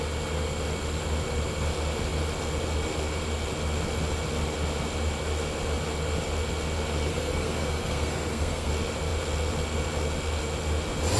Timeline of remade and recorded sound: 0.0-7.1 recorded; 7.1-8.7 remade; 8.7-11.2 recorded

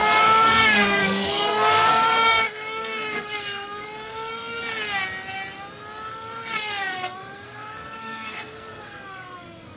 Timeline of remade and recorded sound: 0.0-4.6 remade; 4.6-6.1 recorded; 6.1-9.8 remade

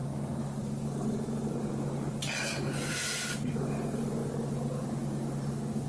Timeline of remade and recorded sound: 0.0-5.9 recorded

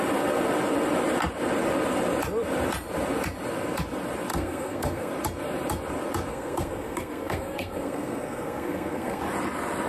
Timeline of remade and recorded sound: 0.0-4.3 recorded; 4.3-5.1 remade; 5.1-6.3 recorded; 6.3-9.2 remade; 9.2-9.9 recorded

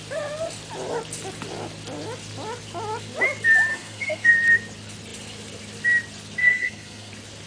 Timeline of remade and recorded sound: 0.0-3.7 recorded; 3.7-4.3 remade; 4.3-6.4 recorded; 6.4-7.1 remade; 7.1-7.5 recorded